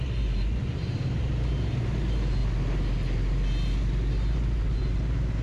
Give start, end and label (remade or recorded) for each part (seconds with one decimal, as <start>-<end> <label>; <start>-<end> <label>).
0.0-5.4 recorded